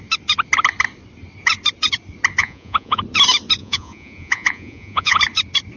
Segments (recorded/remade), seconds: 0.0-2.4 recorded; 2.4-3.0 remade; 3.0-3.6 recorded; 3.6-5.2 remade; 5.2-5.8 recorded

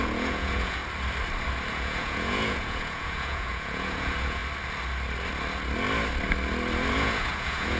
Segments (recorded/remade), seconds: 0.0-0.8 remade; 0.8-1.7 recorded; 1.7-4.4 remade; 4.4-6.9 recorded; 6.9-7.8 remade

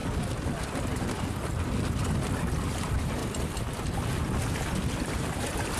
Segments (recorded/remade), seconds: 0.0-2.7 recorded; 2.7-3.2 remade; 3.2-5.0 recorded; 5.0-5.8 remade

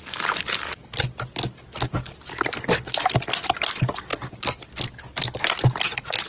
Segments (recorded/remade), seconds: 0.0-6.3 recorded

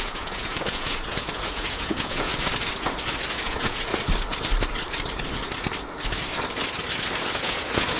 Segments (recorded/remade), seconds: 0.0-2.3 remade; 2.3-3.3 recorded; 3.3-3.9 remade; 3.9-7.3 recorded; 7.3-8.0 remade

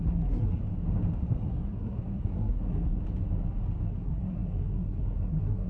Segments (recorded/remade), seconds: 0.0-0.6 remade; 0.6-1.3 recorded; 1.3-3.0 remade; 3.0-3.9 recorded; 3.9-5.7 remade

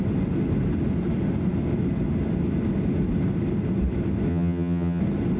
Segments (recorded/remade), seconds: 0.0-4.3 recorded; 4.3-5.0 remade; 5.0-5.4 recorded